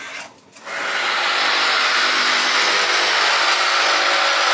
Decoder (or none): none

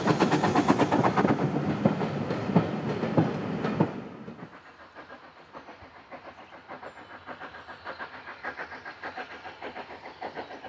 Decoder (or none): none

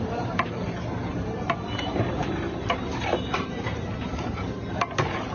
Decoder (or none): vocoder, BigVGAN v2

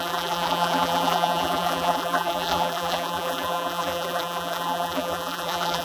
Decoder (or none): vocoder, BigVGAN v2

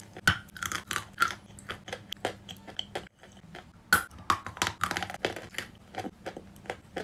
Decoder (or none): none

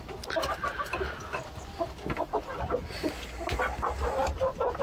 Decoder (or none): none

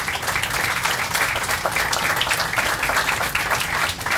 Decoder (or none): none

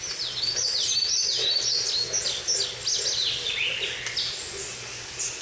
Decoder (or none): none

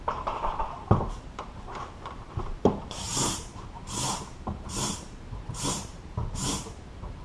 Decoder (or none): vocoder, BigVGAN v2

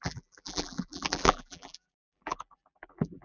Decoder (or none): vocoder, BigVGAN v2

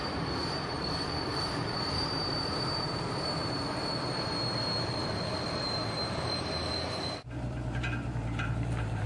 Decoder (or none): vocoder, BigVGAN v2